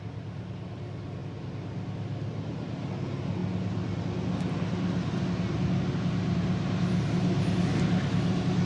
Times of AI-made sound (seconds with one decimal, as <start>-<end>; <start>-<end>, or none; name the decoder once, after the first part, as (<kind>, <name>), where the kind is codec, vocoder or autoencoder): none